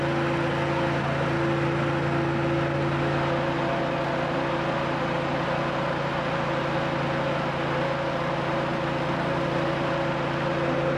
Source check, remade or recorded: recorded